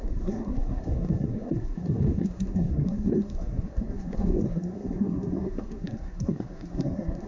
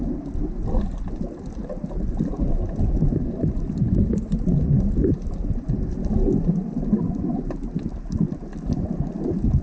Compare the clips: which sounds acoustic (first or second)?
second